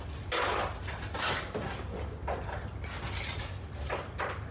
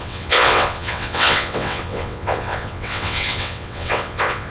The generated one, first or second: second